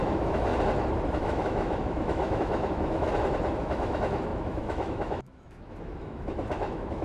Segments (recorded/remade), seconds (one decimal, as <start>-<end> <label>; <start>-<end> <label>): 0.0-0.5 remade; 0.5-1.1 recorded; 1.1-3.1 remade; 3.1-3.6 recorded; 3.6-7.0 remade